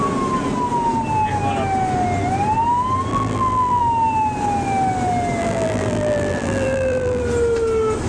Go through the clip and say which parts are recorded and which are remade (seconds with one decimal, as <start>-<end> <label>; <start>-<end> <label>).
0.0-3.1 recorded; 3.1-3.8 remade; 3.8-5.4 recorded; 5.4-7.2 remade; 7.2-8.1 recorded